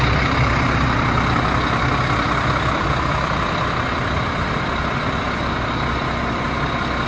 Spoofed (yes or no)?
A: no